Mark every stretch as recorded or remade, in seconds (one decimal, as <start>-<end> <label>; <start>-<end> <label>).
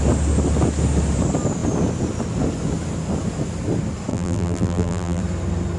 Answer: 0.0-4.1 recorded; 4.1-5.2 remade; 5.2-5.8 recorded